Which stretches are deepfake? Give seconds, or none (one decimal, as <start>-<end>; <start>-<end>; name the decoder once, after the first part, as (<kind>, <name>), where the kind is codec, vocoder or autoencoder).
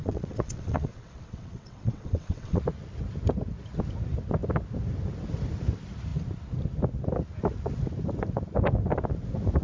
0.0-2.6 (vocoder, WaveNeXt)